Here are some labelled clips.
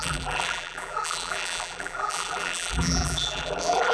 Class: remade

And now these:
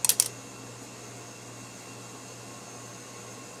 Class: recorded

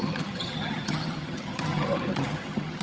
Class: remade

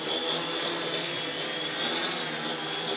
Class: recorded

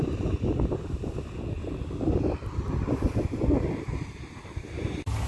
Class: recorded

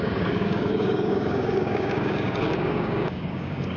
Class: remade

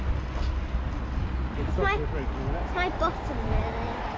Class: recorded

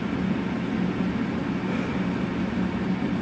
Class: recorded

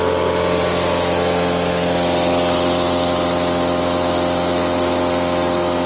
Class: recorded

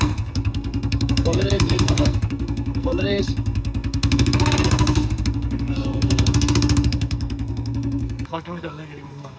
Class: remade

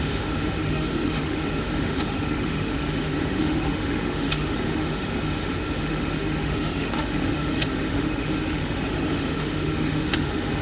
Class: remade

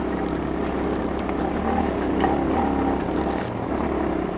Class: recorded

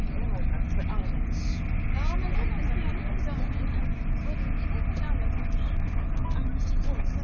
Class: recorded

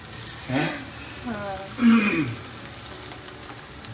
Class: recorded